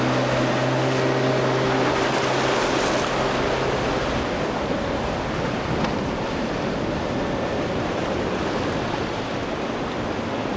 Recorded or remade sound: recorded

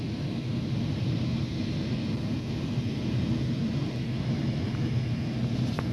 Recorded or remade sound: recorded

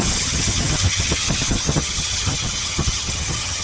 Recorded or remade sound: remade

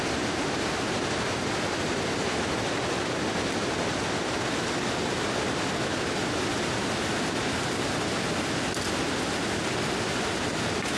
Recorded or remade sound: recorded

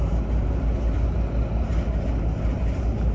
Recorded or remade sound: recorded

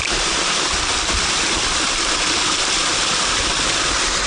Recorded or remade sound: recorded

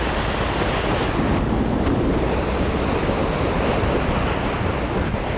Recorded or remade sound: recorded